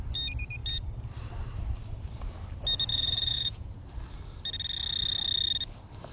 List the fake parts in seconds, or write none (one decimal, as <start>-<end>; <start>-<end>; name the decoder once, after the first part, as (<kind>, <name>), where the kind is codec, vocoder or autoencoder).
2.9-3.8 (vocoder, Vocos)